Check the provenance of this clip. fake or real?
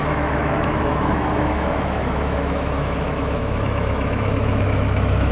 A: fake